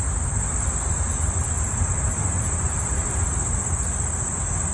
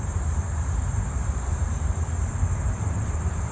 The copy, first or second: second